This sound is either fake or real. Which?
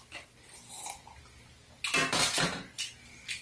real